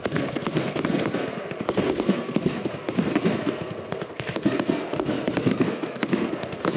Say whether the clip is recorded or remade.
remade